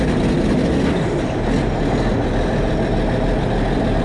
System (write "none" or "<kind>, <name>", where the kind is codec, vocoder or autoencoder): none